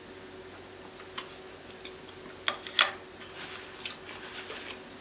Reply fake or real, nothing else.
real